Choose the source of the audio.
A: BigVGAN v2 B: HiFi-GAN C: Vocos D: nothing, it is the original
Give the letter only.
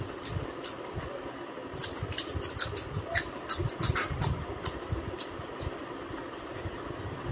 D